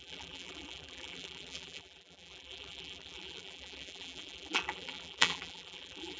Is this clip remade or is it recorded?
remade